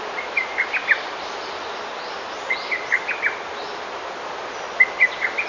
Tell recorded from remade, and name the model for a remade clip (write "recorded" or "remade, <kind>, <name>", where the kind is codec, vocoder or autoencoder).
recorded